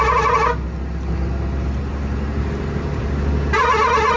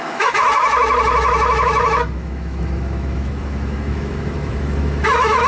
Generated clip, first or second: second